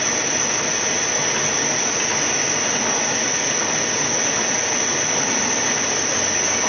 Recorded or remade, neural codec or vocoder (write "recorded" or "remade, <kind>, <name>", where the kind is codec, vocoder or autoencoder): recorded